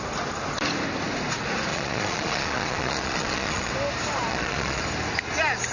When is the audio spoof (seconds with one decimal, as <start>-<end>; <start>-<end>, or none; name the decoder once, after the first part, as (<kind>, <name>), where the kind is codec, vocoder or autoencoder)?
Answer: 1.7-3.7 (vocoder, Vocos); 4.3-4.8